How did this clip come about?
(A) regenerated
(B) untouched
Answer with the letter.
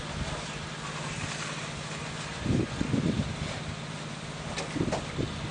B